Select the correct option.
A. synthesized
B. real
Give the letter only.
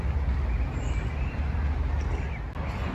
B